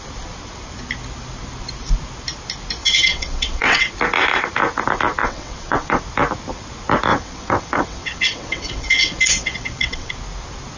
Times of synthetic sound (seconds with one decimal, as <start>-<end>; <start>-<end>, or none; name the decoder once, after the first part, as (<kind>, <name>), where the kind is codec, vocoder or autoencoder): 2.8-3.9 (vocoder, WaveNeXt); 5.2-6.0; 7.1-10.1